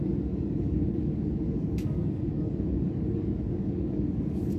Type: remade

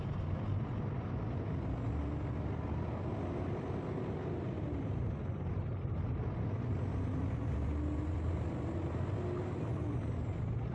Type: recorded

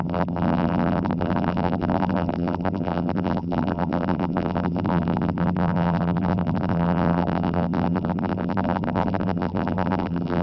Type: remade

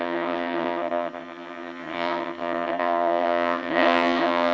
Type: remade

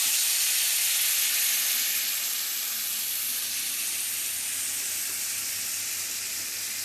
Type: recorded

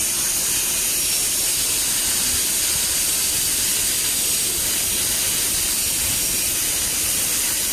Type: recorded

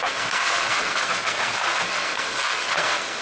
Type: remade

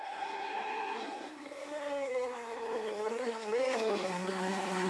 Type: remade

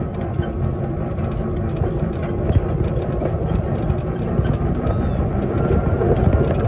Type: recorded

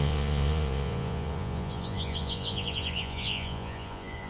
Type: remade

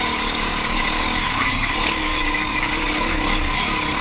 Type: remade